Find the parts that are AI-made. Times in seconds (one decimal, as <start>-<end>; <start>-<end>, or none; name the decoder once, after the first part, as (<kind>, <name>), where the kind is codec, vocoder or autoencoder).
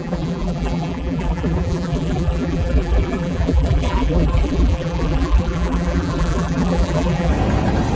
0.0-7.3 (vocoder, BigVGAN v2)